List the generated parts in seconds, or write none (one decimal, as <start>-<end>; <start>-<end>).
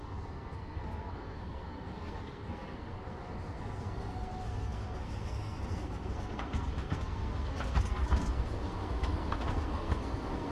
0.0-10.5